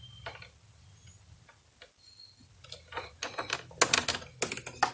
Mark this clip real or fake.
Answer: real